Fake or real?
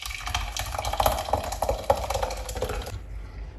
real